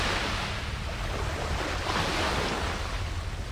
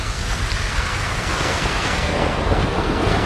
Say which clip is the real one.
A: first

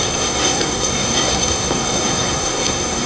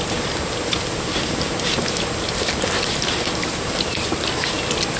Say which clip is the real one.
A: second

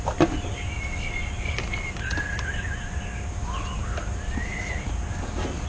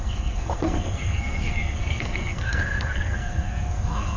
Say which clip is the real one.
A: first